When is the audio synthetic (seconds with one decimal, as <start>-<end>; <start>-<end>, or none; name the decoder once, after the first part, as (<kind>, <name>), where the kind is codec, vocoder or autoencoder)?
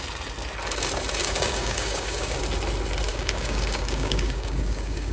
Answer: 1.2-2.4 (codec, DAC); 3.1-5.1